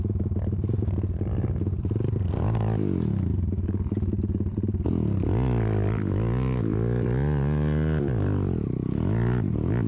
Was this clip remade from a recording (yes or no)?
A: no